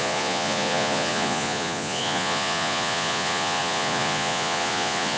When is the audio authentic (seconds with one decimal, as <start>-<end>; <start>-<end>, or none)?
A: none